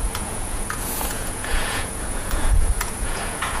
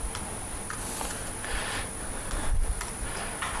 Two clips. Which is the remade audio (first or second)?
first